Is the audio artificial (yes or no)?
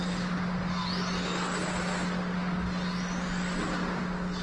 no